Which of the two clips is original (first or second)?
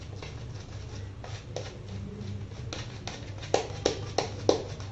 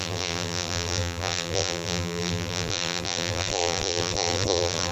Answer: first